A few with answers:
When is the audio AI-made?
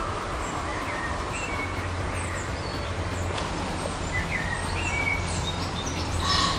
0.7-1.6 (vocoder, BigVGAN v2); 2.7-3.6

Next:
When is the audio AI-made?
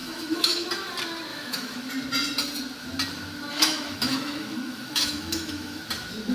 0.0-0.7 (autoencoder, DAC-VAE); 1.3-1.9; 3.5-5.8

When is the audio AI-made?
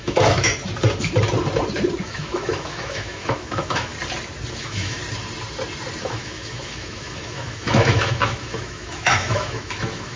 0.0-0.5 (autoencoder, DAC-VAE); 2.0-3.9; 4.6-5.0; 6.0-10.2